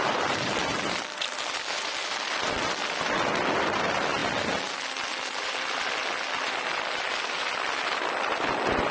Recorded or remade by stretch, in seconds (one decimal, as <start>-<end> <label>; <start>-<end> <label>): 0.0-8.9 recorded